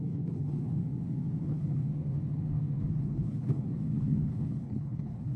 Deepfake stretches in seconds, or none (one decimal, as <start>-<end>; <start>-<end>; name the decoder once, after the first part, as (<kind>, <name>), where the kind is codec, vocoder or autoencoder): 0.0-0.8 (codec, HILCodec); 1.4-1.9; 2.9-5.4